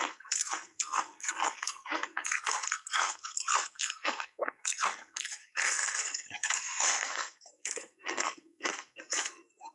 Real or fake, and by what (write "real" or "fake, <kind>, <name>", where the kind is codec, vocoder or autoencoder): fake, codec, SNAC